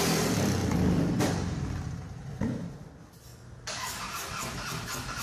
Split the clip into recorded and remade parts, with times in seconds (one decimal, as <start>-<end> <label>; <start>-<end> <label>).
0.0-0.6 recorded; 0.6-1.2 remade; 1.2-3.3 recorded; 3.3-4.0 remade; 4.0-5.2 recorded